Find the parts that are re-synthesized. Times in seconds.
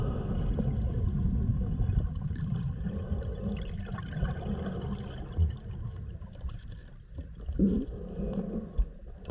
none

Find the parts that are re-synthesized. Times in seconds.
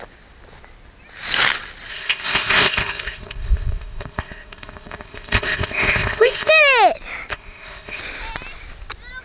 1.9-6.5 (codec, ZipCodec); 7.3-8.0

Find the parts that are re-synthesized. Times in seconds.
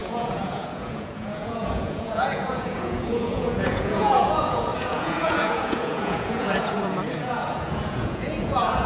0.0-8.9 (vocoder, Vocos)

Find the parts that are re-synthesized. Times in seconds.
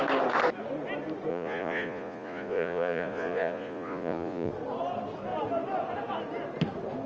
1.3-4.5 (vocoder, Vocos)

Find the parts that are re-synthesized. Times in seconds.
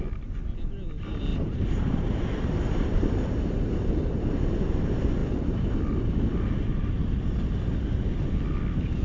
1.3-3.8 (vocoder, BigVGAN v2)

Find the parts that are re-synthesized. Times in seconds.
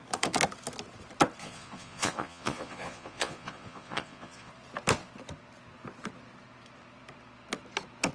1.4-4.5 (vocoder, Vocos)